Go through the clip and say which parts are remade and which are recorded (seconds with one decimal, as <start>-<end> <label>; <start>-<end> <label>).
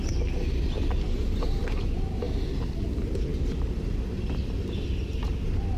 0.0-5.8 recorded